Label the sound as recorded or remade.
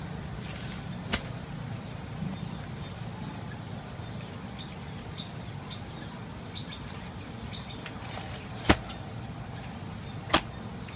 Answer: recorded